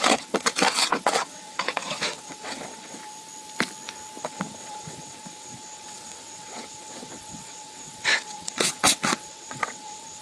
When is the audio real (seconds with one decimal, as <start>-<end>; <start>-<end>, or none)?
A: 3.0-4.2